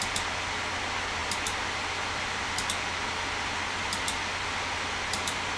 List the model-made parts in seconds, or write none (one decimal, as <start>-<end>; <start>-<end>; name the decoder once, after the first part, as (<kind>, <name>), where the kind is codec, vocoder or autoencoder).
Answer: none